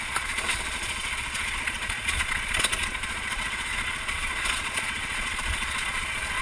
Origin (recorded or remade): remade